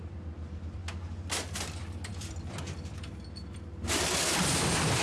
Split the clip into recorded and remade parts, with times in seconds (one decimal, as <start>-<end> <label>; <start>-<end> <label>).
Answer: 0.0-0.8 remade; 0.8-1.6 recorded; 1.6-5.0 remade